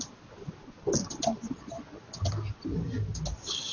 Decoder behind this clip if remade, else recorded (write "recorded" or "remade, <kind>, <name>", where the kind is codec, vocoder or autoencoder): recorded